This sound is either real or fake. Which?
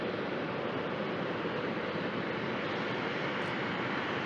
real